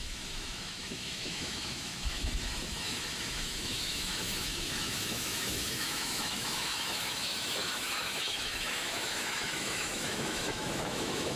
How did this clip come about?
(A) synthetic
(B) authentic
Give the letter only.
A